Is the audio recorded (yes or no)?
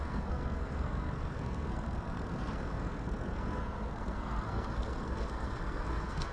no